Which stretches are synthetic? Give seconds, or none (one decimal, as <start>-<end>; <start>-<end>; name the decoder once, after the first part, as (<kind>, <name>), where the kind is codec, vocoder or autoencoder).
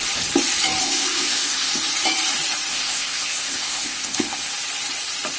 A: 0.8-1.7 (codec, ZipCodec); 2.7-4.5